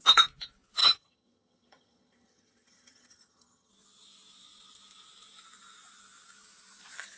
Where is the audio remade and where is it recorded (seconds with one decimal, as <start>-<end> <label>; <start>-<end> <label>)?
0.0-0.8 recorded; 0.8-3.7 remade; 3.7-7.2 recorded